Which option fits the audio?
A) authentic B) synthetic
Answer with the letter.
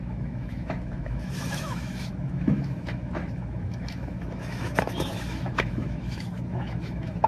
B